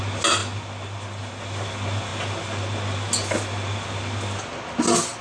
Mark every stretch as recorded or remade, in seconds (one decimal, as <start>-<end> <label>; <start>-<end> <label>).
0.0-5.2 recorded